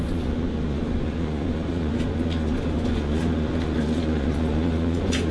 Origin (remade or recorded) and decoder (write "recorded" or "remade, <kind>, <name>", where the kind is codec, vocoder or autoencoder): remade, vocoder, Vocos